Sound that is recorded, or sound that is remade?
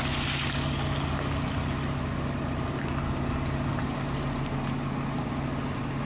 recorded